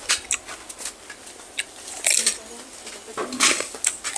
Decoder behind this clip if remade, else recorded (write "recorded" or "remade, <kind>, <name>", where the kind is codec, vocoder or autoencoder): recorded